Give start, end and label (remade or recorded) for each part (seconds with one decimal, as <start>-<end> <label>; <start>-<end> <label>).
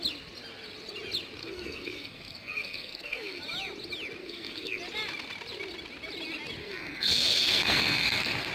0.0-1.4 recorded; 1.4-3.4 remade; 3.4-4.2 recorded; 4.2-4.8 remade; 4.8-6.6 recorded; 6.6-8.5 remade